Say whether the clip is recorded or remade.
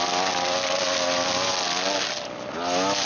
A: recorded